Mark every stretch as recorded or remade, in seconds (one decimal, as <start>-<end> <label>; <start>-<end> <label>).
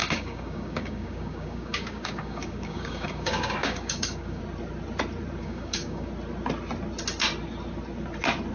0.0-4.4 remade; 4.4-5.4 recorded; 5.4-6.1 remade; 6.1-8.5 recorded